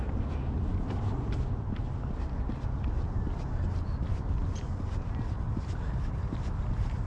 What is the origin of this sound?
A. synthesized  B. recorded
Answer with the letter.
B